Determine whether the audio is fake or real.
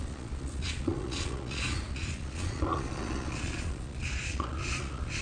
fake